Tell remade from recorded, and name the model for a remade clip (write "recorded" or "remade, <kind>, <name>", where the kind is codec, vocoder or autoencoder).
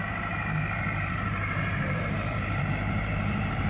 remade, vocoder, BigVGAN v2